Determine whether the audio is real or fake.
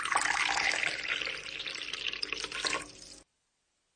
real